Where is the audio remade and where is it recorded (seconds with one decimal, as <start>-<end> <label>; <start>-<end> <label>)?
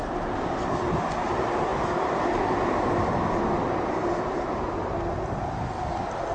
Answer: 0.0-6.3 recorded